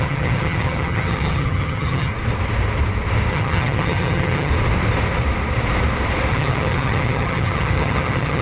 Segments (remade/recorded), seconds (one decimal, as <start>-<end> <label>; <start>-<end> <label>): 0.0-2.1 remade; 2.1-3.3 recorded; 3.3-4.5 remade; 4.5-6.3 recorded; 6.3-8.4 remade